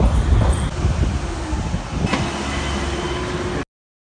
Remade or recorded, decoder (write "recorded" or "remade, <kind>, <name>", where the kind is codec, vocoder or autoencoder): recorded